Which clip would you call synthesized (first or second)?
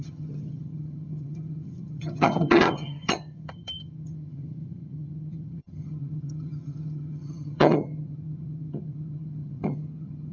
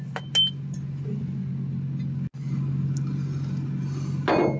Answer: first